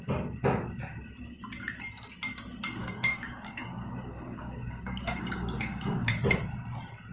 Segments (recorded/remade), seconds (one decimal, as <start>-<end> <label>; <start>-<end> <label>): 0.0-2.8 recorded; 2.8-6.2 remade; 6.2-7.1 recorded